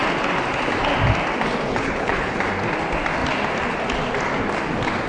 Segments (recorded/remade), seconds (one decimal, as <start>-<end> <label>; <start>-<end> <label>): 0.0-1.7 recorded; 1.7-2.4 remade; 2.4-5.1 recorded

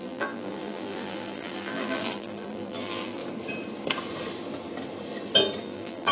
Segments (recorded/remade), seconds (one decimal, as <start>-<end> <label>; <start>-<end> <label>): 0.0-3.2 remade; 3.2-5.6 recorded; 5.6-6.1 remade

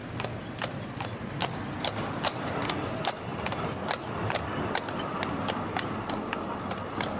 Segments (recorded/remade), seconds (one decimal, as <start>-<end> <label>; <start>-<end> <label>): 0.0-7.2 recorded

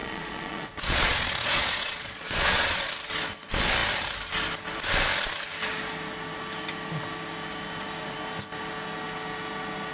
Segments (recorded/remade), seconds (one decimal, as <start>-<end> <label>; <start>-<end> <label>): 0.0-2.9 remade; 2.9-9.9 recorded